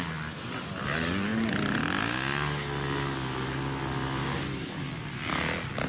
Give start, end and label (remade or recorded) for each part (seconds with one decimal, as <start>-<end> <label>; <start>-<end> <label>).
0.0-4.2 recorded; 4.2-4.8 remade; 4.8-5.9 recorded